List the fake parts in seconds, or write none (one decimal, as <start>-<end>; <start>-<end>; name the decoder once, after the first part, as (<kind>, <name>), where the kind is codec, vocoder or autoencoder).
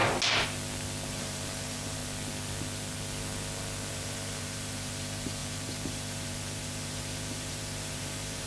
1.1-2.0 (vocoder, BigVGAN v2); 3.9-8.5